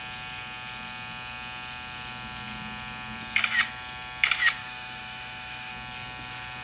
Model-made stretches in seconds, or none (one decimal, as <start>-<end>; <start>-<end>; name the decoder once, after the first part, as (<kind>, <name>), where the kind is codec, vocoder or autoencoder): 4.6-5.7 (autoencoder, DAC-VAE)